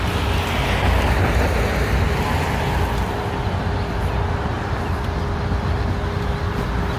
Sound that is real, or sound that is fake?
real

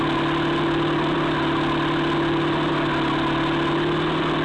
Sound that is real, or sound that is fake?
real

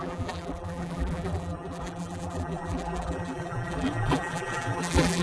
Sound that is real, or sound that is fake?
fake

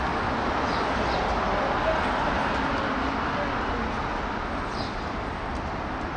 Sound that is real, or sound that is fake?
real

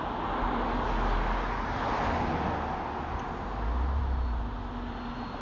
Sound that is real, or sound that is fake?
real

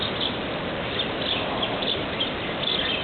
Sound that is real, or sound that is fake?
real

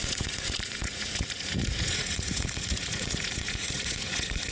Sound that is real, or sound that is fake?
fake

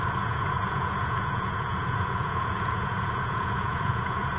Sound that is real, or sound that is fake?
fake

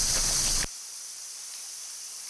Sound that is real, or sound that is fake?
real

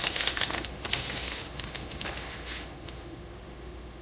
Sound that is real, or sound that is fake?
fake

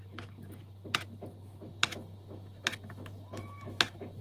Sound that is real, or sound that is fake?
fake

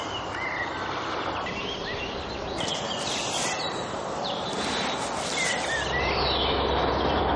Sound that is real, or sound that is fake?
fake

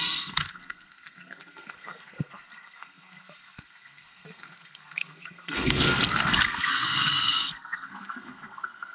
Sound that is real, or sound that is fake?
fake